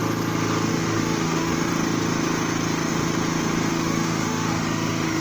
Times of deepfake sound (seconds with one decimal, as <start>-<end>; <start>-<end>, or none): 0.7-1.7; 3.7-5.2